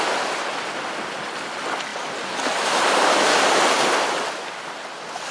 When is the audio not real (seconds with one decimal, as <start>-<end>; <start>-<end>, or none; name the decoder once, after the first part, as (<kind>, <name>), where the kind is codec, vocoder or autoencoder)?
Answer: none